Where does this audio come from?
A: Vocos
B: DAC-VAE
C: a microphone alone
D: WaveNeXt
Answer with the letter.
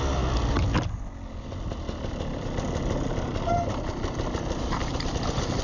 C